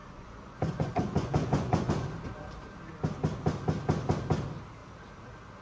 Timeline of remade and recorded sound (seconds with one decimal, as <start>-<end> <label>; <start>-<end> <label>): 0.0-1.9 remade; 1.9-5.6 recorded

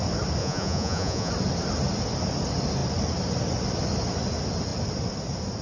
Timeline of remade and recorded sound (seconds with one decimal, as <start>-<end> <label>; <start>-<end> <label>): 0.0-0.4 recorded; 0.4-1.3 remade; 1.3-5.6 recorded

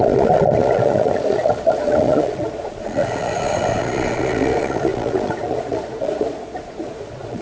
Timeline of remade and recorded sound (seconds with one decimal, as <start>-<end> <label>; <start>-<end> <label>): 0.0-7.4 remade